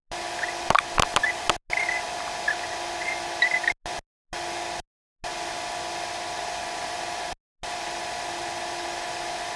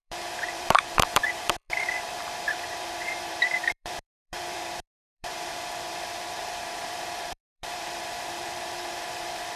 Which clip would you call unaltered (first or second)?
first